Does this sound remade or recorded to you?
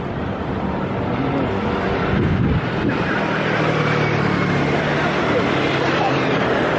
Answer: recorded